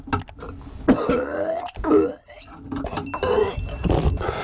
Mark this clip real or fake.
real